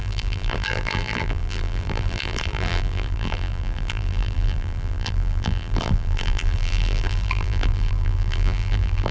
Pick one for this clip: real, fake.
fake